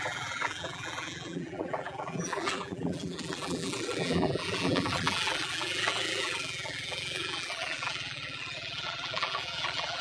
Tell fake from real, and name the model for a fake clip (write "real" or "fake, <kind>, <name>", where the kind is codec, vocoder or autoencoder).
fake, vocoder, BigVGAN v2